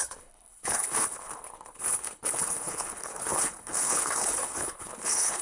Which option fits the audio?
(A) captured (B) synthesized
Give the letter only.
B